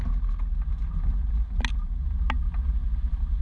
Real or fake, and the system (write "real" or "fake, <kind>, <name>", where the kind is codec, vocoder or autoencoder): real